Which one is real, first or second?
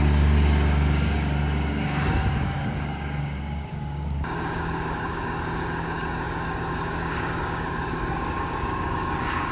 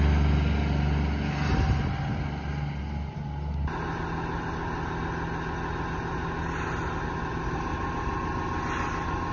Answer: second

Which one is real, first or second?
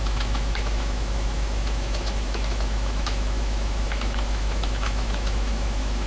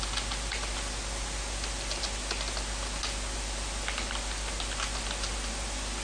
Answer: second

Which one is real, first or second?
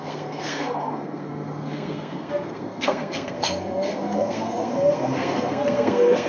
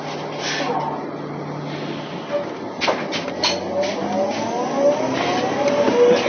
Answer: second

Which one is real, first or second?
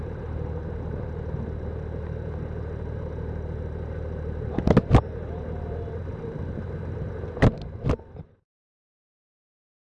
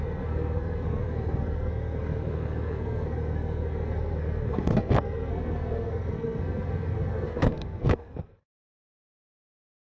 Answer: first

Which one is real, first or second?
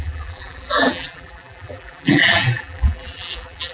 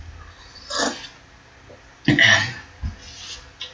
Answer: second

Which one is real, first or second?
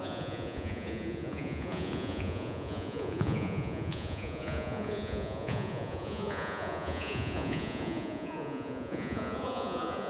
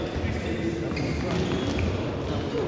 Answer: second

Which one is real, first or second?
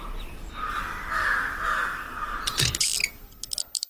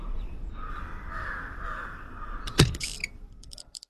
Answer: first